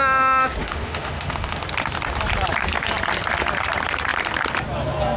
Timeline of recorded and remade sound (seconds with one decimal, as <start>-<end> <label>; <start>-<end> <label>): 0.0-0.6 recorded; 0.6-1.6 remade; 1.6-5.2 recorded